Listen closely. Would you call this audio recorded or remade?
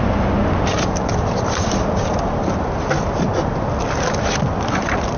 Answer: recorded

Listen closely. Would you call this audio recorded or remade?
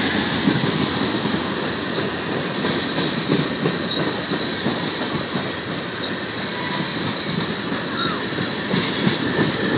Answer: recorded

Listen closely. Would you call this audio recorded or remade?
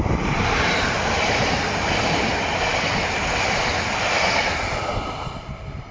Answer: recorded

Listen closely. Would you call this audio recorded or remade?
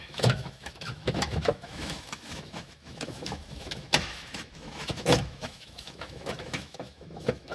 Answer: remade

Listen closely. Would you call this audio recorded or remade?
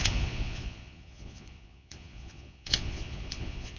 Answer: remade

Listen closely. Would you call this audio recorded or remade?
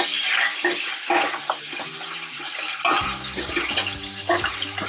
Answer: recorded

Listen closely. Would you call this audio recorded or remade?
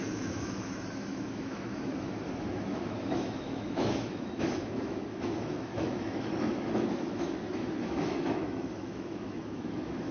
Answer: remade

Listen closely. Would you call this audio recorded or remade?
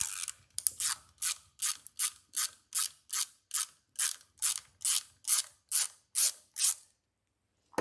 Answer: recorded